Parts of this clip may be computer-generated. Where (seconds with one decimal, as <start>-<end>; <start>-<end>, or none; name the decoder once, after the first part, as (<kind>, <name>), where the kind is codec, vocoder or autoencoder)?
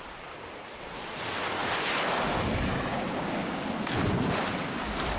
2.9-3.6 (codec, DAC)